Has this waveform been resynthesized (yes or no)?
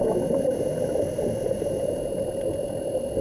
no